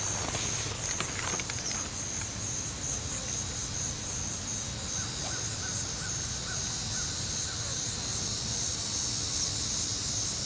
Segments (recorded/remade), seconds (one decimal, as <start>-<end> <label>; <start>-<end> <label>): 0.0-10.5 recorded